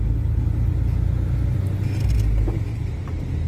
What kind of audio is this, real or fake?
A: real